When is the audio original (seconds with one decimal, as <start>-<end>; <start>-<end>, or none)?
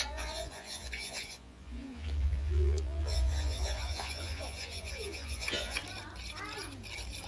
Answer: 5.8-7.3